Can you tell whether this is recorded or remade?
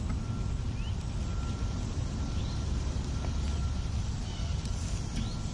recorded